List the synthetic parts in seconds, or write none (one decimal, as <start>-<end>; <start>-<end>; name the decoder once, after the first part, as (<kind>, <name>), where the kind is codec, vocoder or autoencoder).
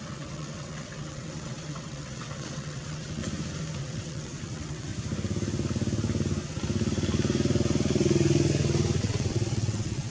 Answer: 0.0-3.2 (vocoder, WaveNeXt); 3.8-4.9; 9.0-10.1